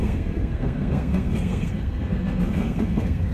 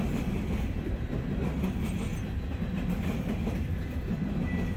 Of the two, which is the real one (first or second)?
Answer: second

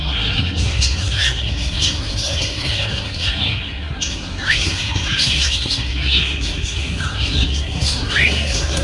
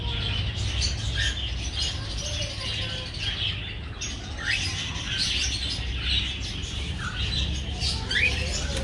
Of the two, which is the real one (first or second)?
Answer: second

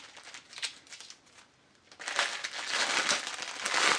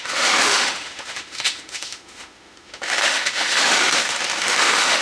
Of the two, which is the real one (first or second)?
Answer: first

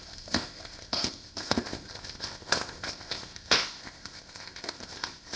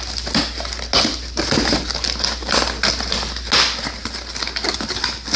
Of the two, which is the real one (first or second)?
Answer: second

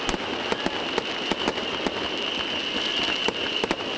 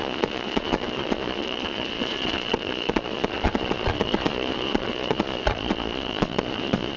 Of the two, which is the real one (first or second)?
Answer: first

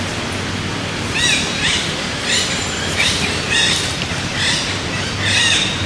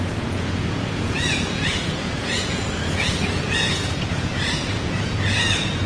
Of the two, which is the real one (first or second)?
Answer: first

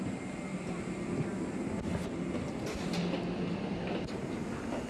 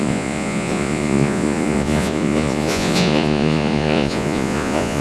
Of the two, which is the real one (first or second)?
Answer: first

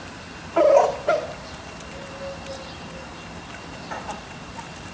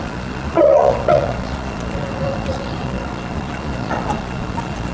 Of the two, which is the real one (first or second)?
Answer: first